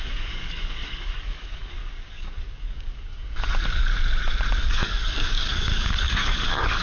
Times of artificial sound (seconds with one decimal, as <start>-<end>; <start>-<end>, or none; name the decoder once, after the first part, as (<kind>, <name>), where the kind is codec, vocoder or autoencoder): 0.0-3.9 (codec, DAC); 4.7-6.8